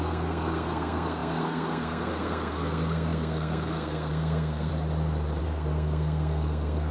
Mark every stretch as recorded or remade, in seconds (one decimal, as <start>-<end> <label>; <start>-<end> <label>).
0.0-4.7 remade; 4.7-5.4 recorded; 5.4-6.9 remade